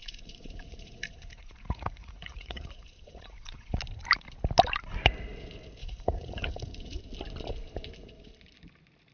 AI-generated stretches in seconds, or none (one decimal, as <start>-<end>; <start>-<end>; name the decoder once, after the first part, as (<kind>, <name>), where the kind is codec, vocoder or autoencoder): 0.0-3.8 (vocoder, Vocos); 5.8-7.0